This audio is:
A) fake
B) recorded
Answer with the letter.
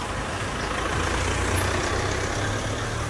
B